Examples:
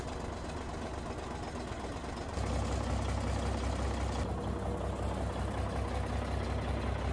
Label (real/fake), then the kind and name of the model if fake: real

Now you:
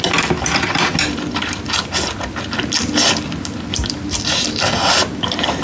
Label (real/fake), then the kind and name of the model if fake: real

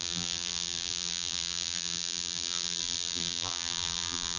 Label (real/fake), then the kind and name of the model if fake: fake, vocoder, BigVGAN v2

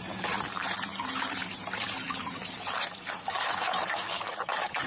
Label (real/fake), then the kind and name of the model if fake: fake, vocoder, BigVGAN v2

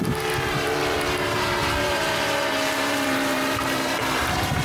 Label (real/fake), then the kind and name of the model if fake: fake, vocoder, BigVGAN v2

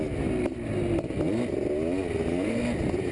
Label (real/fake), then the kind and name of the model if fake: real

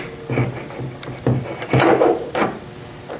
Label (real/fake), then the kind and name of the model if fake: real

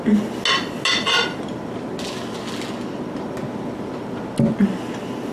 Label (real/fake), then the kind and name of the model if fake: real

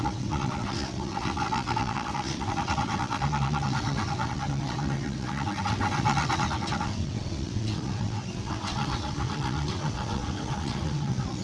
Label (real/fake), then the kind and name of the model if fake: fake, vocoder, WaveNeXt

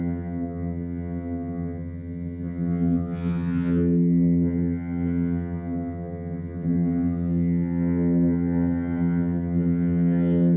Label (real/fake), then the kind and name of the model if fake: fake, vocoder, HiFi-GAN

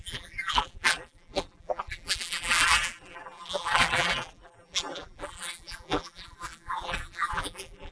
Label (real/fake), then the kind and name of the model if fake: fake, vocoder, BigVGAN v2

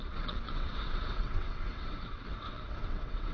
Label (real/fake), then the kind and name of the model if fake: fake, vocoder, WaveNeXt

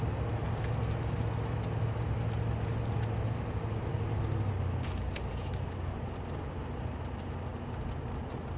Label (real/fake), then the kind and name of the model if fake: real